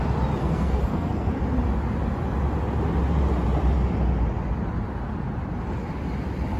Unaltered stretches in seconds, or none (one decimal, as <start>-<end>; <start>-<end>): 0.0-0.4; 1.3-6.6